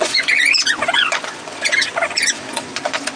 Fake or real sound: fake